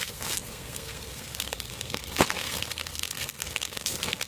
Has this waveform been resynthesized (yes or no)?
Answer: yes